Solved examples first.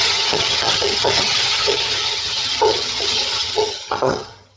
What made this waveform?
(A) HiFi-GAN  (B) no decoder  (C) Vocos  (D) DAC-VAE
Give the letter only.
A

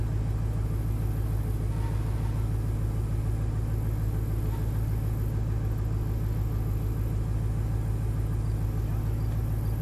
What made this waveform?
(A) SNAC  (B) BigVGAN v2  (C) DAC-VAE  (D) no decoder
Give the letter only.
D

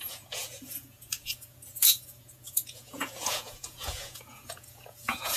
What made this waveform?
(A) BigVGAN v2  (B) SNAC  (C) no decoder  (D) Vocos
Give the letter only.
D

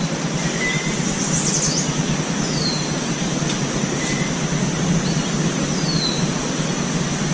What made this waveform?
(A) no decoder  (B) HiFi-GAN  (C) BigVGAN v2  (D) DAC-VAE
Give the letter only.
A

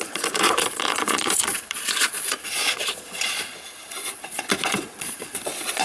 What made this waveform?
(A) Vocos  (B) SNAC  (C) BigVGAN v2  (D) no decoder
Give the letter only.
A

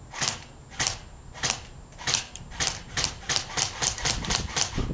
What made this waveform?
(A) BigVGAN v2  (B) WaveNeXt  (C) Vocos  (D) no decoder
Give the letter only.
D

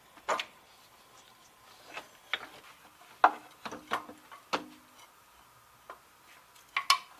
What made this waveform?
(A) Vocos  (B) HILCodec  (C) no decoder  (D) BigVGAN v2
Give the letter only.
C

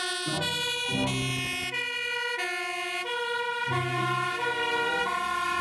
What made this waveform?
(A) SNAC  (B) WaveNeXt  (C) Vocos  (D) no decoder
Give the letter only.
D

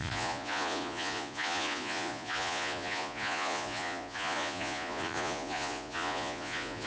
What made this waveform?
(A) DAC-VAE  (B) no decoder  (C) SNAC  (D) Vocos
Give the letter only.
D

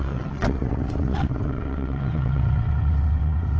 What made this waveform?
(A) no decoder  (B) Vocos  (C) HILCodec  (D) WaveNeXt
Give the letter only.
D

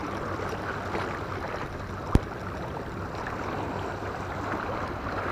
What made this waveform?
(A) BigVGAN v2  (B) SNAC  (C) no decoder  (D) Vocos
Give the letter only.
C